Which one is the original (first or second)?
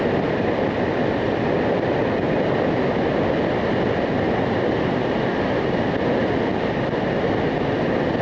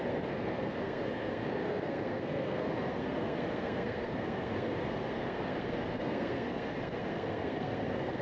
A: first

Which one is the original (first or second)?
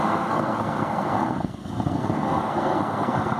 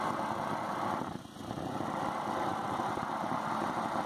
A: second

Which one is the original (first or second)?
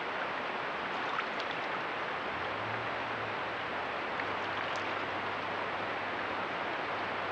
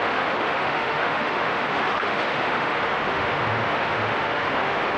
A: first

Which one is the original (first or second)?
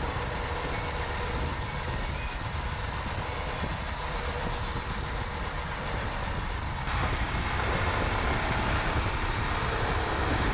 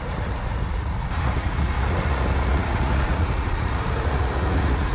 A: first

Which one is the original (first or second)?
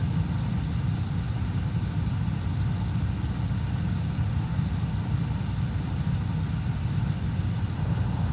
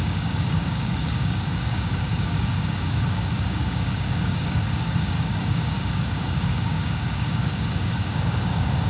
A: first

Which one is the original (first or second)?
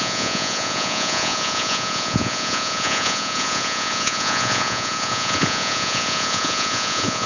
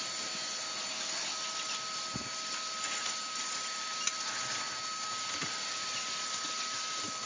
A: second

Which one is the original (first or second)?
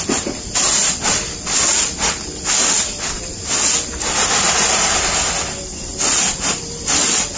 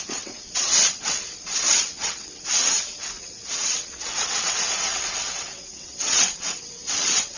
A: first